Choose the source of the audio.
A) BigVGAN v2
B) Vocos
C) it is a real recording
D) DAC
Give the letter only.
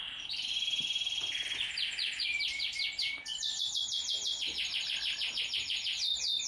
A